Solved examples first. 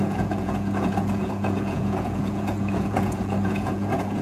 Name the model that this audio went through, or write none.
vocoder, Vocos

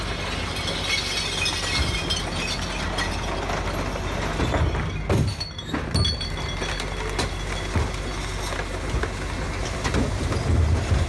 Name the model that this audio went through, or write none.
none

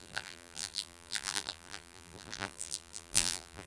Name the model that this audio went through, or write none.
vocoder, BigVGAN v2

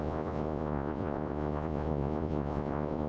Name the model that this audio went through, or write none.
vocoder, Vocos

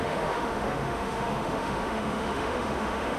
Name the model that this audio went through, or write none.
autoencoder, DAC-VAE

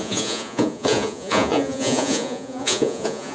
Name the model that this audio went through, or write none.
vocoder, Vocos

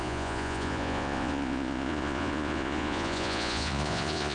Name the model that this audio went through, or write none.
vocoder, Vocos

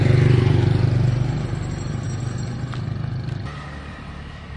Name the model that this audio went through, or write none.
none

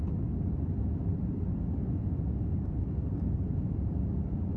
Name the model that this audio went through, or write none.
none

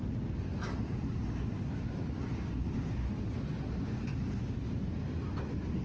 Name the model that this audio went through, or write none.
none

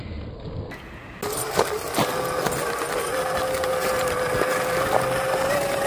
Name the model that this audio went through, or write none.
none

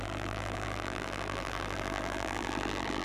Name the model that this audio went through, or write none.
vocoder, BigVGAN v2